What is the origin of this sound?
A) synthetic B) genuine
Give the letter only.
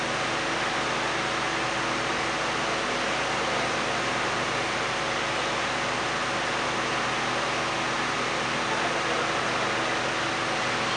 B